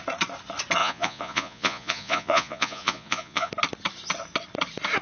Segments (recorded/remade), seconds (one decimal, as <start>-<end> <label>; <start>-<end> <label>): 0.0-0.8 recorded; 0.8-3.5 remade; 3.5-5.0 recorded